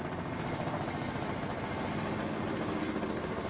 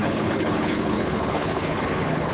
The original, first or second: first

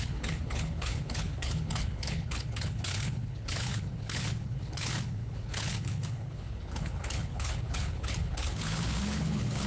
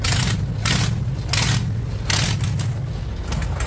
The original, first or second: second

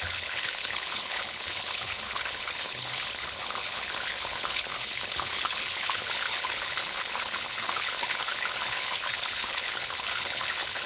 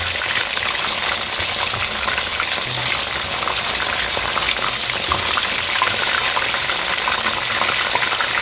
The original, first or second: second